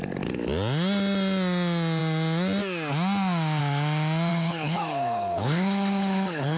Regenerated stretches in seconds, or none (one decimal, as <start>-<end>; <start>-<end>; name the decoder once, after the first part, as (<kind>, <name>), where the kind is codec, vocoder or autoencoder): 4.3-6.6 (codec, HILCodec)